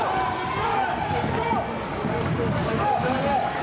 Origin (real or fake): real